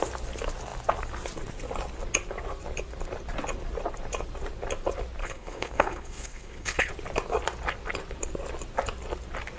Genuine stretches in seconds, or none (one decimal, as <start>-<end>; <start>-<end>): 0.0-5.2; 6.9-9.6